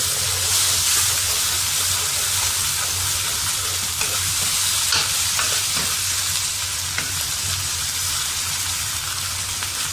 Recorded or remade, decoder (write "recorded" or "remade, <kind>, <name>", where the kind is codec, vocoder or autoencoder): recorded